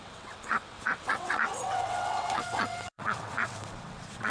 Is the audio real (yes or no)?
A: no